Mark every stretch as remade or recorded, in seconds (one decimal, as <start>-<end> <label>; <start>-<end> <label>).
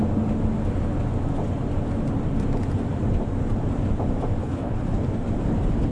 0.0-4.4 recorded; 4.4-5.0 remade; 5.0-5.9 recorded